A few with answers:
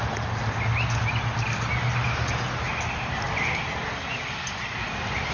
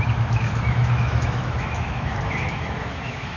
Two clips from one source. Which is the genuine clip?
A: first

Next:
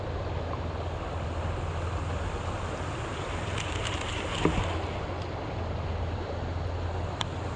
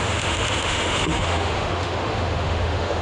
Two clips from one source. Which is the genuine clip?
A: first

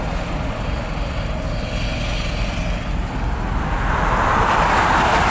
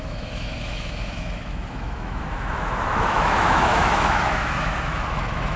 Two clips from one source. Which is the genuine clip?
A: first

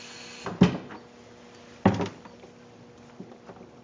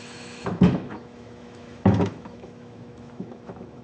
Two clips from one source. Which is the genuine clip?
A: first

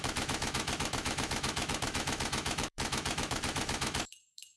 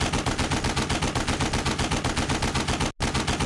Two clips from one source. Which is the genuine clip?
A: second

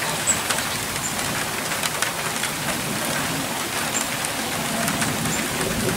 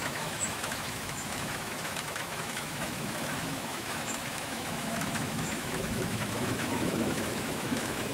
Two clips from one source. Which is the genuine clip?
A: first